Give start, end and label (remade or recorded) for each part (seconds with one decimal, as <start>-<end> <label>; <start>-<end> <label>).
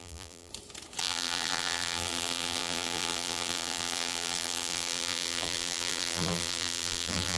0.0-0.5 remade; 0.5-1.0 recorded; 1.0-7.4 remade